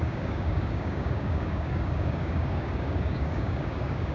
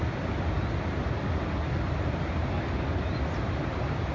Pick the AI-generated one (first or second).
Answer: first